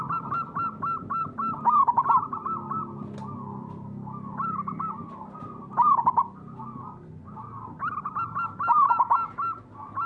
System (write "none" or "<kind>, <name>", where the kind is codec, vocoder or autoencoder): none